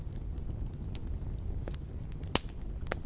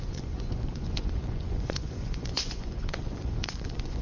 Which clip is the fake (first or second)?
second